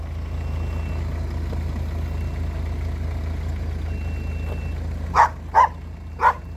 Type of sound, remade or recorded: recorded